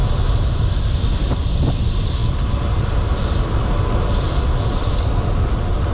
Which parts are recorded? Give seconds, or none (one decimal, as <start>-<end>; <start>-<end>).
0.0-5.9